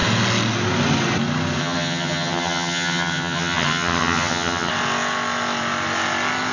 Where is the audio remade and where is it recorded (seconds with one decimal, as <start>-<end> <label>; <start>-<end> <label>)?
0.0-1.6 recorded; 1.6-4.7 remade; 4.7-6.5 recorded